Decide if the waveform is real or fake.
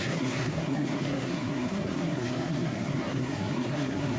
fake